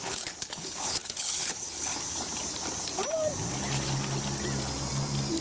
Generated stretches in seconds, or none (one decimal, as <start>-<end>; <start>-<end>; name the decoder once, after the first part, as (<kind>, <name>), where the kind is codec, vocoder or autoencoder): 0.0-1.9 (codec, HILCodec)